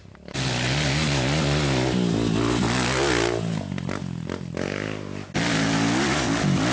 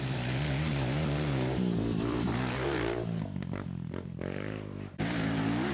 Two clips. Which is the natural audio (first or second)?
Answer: first